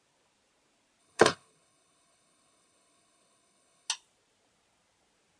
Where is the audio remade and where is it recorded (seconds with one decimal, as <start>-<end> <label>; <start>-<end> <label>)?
0.0-1.0 recorded; 1.0-3.9 remade; 3.9-5.4 recorded